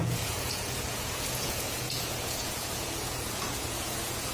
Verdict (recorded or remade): remade